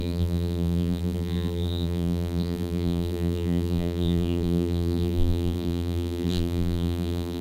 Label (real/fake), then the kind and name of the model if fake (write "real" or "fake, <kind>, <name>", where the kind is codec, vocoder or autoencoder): fake, vocoder, BigVGAN v2